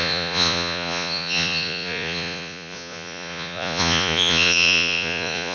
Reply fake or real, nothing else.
fake